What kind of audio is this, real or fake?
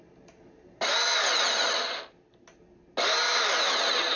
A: real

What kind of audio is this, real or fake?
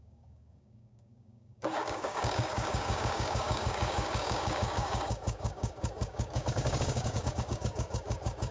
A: fake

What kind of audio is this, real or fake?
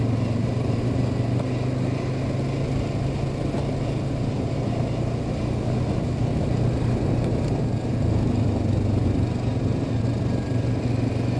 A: real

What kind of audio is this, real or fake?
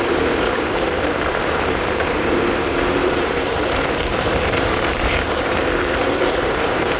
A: fake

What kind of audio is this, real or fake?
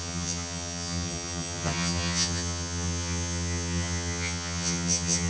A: fake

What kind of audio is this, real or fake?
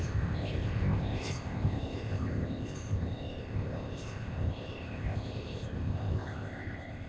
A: fake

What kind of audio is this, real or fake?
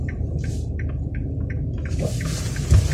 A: real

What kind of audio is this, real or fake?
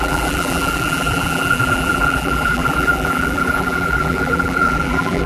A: fake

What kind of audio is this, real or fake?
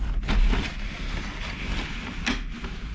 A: real